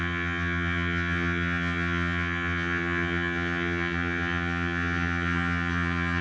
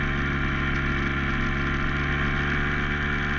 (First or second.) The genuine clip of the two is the second